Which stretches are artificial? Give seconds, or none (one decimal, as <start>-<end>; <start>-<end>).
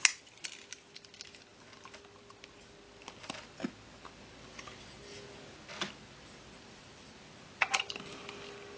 none